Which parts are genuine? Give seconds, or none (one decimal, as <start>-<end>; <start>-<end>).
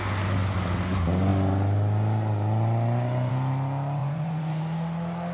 0.0-4.0; 4.6-5.3